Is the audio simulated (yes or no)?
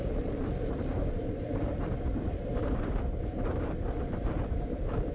yes